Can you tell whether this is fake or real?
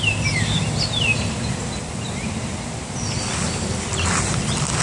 real